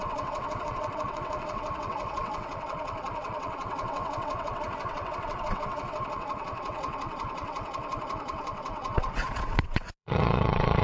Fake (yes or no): yes